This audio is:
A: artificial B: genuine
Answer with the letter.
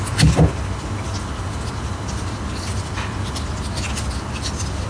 B